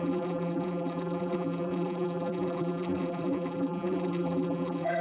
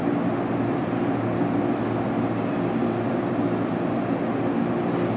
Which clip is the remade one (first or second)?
first